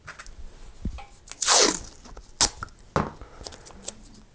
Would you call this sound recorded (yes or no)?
yes